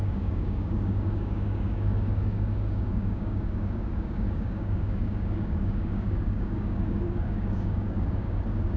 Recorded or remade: remade